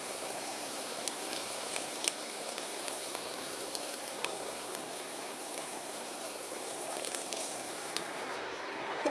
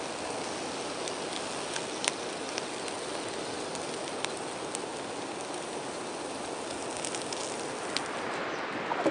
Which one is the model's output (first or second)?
first